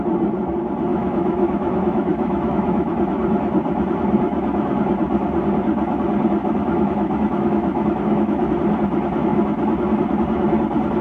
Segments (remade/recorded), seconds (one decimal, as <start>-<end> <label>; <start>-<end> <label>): 0.0-0.9 recorded; 0.9-2.9 remade; 2.9-6.4 recorded; 6.4-8.5 remade; 8.5-11.0 recorded